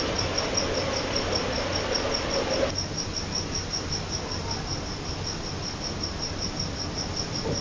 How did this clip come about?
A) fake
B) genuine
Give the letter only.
B